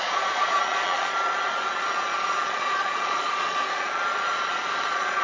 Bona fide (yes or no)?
no